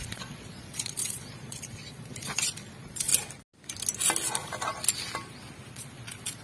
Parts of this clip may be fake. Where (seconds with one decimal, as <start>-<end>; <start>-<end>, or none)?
0.0-3.1; 5.7-6.4